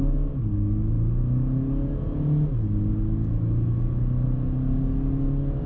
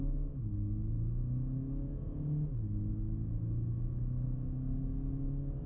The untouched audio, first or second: first